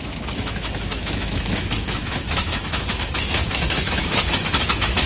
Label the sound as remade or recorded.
remade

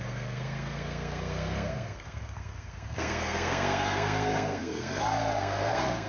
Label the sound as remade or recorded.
remade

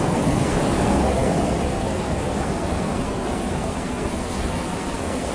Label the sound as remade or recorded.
remade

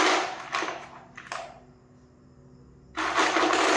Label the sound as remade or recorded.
recorded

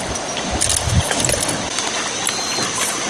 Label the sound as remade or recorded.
recorded